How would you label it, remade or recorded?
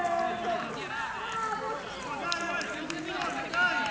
recorded